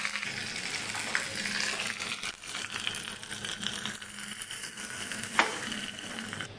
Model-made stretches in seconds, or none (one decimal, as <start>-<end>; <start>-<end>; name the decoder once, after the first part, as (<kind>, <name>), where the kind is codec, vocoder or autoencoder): 4.6-5.6 (codec, SNAC)